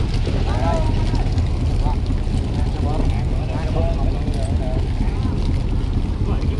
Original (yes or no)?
yes